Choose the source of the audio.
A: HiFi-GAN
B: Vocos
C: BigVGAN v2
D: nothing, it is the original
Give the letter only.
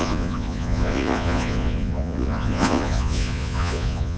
B